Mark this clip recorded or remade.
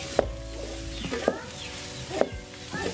recorded